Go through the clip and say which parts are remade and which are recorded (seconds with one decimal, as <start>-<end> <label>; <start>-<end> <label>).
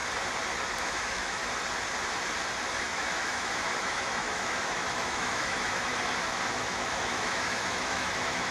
0.0-0.8 recorded; 0.8-1.4 remade; 1.4-2.8 recorded; 2.8-5.9 remade; 5.9-6.5 recorded; 6.5-8.5 remade